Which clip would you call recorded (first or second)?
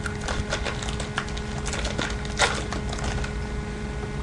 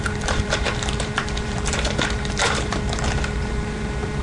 first